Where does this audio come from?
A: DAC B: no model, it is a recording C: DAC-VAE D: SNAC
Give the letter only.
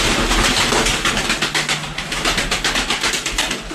B